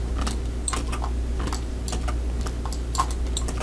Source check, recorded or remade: recorded